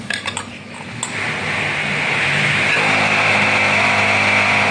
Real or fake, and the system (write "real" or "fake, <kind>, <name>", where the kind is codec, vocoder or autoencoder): real